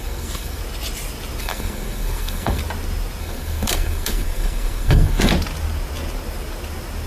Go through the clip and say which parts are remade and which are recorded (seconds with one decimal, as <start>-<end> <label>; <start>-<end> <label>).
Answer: 0.0-0.6 remade; 0.6-1.4 recorded; 1.4-2.6 remade; 2.6-3.2 recorded; 3.2-5.3 remade; 5.3-7.1 recorded